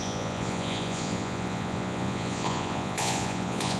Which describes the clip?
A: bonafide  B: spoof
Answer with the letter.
B